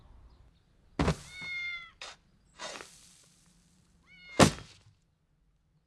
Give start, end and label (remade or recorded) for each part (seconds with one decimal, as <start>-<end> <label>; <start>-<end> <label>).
0.0-5.9 recorded